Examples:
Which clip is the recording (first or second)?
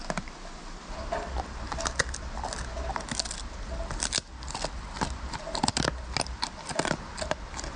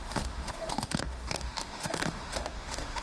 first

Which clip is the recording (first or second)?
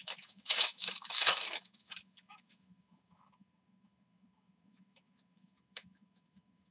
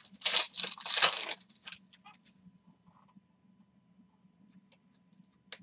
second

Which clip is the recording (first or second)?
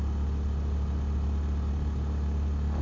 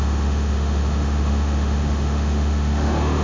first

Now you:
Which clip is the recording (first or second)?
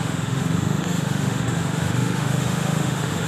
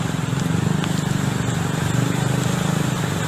second